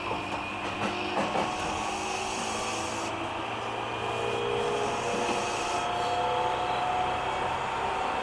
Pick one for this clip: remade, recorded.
recorded